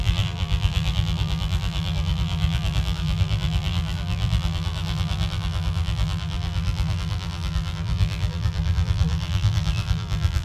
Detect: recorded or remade remade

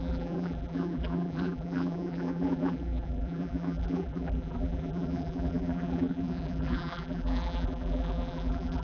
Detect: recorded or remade remade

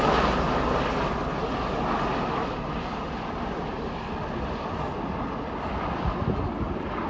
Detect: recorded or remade recorded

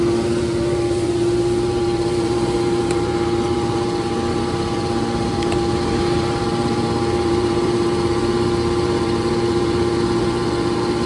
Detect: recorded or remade remade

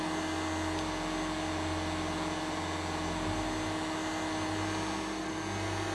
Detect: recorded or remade recorded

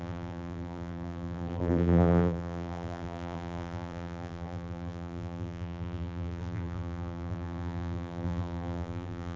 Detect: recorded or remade remade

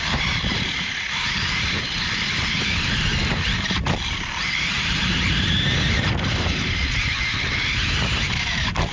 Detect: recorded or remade remade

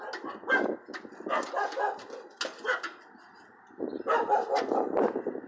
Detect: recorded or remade recorded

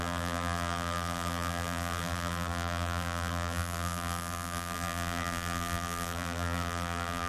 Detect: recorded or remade remade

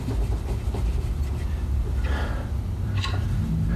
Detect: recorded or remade remade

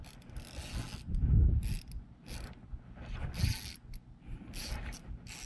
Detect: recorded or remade recorded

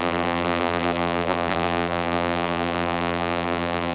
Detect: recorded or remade remade